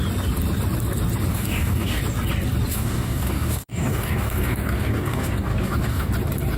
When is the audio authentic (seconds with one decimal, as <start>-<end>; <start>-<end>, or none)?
0.0-1.3; 2.0-2.7; 6.1-6.6